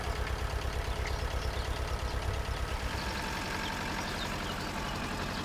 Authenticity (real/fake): real